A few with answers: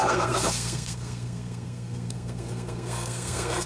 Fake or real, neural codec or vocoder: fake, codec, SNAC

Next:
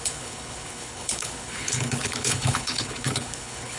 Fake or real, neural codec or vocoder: fake, codec, HILCodec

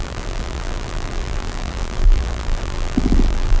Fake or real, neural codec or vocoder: fake, vocoder, BigVGAN v2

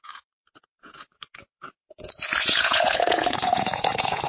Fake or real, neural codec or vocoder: fake, vocoder, Vocos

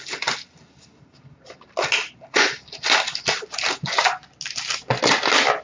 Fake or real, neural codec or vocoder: real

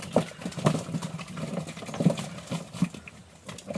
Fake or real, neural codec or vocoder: real